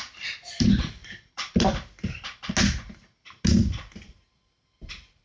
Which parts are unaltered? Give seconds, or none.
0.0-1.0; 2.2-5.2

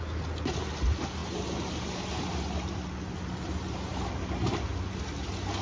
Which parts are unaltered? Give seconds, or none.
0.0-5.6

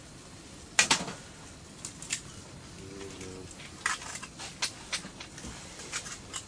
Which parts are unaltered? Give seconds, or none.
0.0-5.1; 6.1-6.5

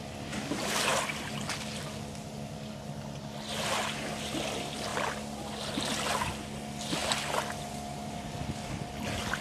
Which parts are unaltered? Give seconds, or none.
0.0-9.4

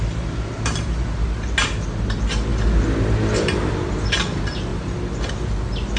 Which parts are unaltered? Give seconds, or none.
0.0-6.0

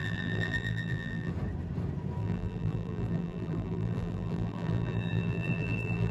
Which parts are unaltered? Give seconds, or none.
1.3-2.2

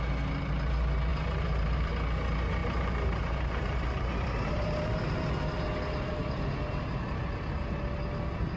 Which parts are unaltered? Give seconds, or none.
0.0-1.1; 1.9-2.6; 5.3-8.6

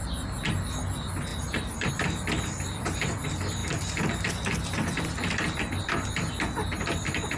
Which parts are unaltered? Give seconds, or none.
0.0-1.3; 1.9-3.6; 4.3-7.4